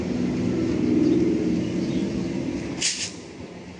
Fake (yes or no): no